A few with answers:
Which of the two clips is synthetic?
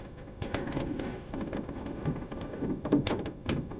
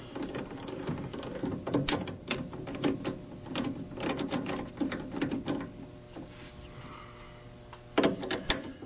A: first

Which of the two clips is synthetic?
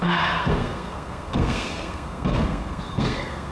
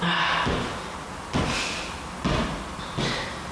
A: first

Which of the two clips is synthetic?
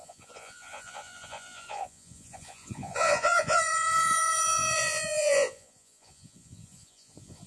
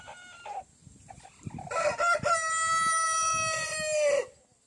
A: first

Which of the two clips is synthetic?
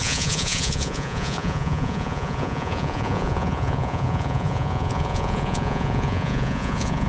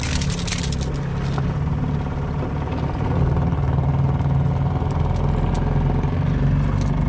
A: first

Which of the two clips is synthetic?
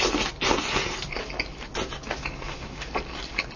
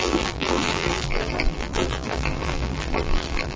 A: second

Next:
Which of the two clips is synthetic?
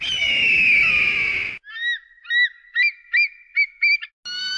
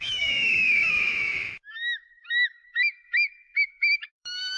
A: second